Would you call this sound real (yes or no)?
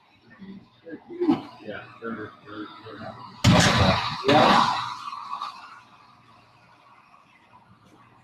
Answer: yes